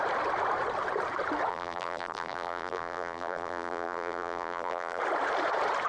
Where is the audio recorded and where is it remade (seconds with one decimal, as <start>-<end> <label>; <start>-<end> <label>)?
0.0-1.5 recorded; 1.5-5.0 remade; 5.0-5.9 recorded